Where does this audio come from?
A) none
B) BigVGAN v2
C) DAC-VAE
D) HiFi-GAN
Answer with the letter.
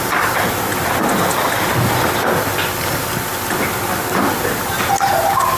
A